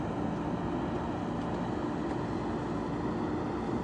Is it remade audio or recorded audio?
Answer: recorded